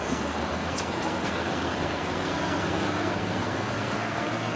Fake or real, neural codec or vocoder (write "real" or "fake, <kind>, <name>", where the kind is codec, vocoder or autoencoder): fake, codec, SNAC